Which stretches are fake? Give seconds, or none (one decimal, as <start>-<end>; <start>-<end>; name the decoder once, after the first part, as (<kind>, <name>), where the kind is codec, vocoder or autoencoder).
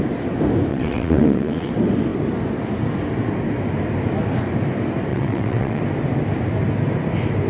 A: 0.7-1.7 (vocoder, WaveNeXt); 5.1-5.8